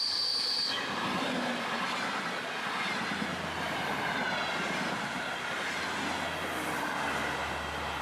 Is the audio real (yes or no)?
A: yes